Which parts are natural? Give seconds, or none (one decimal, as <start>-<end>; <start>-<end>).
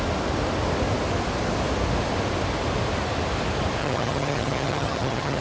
0.0-3.8